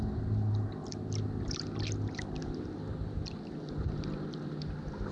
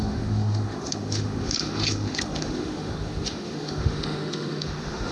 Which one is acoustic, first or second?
first